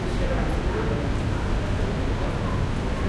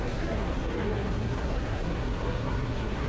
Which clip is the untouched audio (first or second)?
first